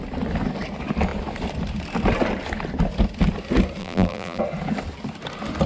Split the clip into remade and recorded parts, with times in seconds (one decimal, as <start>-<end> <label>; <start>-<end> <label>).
0.0-3.8 recorded; 3.8-4.4 remade; 4.4-5.7 recorded